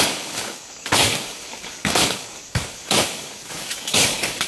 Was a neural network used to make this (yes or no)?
yes